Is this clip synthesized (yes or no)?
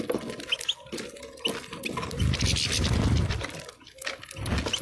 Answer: no